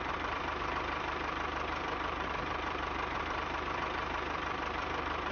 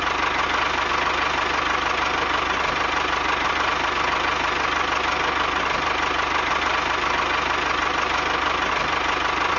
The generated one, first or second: first